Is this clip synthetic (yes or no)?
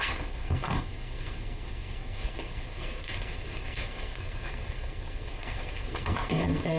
yes